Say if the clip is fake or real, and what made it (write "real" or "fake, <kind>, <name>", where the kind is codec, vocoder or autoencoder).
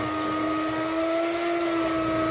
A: real